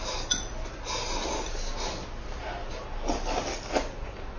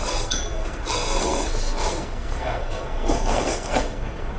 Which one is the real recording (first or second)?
first